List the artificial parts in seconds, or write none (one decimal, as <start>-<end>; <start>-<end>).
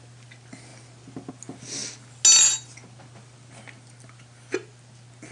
none